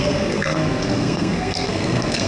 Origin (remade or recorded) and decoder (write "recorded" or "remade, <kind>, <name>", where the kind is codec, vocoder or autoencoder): remade, codec, SNAC